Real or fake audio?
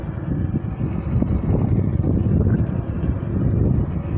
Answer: real